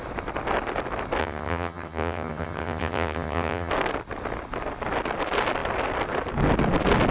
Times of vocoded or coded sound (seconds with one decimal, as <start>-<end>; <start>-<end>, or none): 1.2-3.7